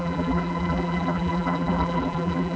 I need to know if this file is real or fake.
fake